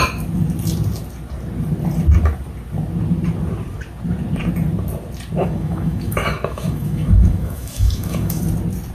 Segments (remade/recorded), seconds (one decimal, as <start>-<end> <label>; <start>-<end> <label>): 0.0-5.4 recorded; 5.4-8.4 remade; 8.4-8.9 recorded